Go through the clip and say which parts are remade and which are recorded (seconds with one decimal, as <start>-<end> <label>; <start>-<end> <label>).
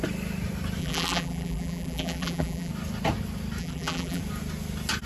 0.0-0.8 recorded; 0.8-2.7 remade; 2.7-3.6 recorded; 3.6-4.2 remade; 4.2-5.1 recorded